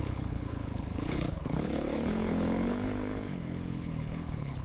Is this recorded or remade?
remade